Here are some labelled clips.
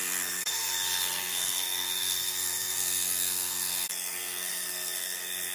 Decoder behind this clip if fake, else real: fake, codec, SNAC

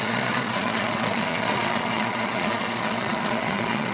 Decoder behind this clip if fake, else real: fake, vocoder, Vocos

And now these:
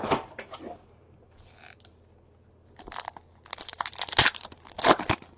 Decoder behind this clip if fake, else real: real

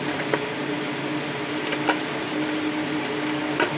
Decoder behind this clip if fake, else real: real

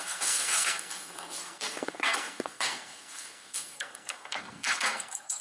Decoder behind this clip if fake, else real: fake, codec, SNAC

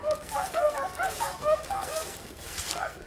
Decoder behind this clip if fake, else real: fake, codec, SNAC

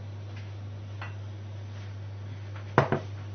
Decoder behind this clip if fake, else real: real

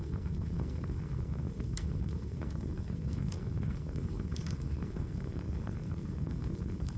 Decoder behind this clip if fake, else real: fake, codec, SNAC